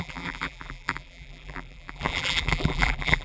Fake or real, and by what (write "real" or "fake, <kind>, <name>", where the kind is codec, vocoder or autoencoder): fake, vocoder, BigVGAN v2